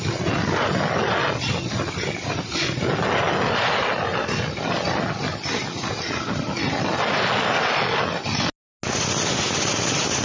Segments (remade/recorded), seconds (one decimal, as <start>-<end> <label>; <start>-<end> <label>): 0.0-4.1 recorded; 4.1-5.9 remade; 5.9-10.2 recorded